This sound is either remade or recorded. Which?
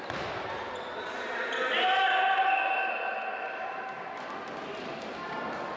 recorded